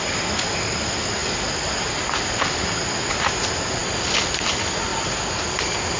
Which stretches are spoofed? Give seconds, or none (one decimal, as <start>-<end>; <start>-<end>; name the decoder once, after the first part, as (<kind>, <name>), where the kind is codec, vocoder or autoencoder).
none